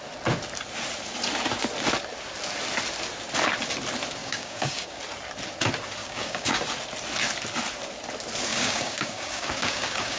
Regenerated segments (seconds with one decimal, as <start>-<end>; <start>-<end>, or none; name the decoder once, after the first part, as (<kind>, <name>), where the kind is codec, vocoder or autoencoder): 4.2-5.0 (codec, DAC); 6.0-6.6; 8.5-10.2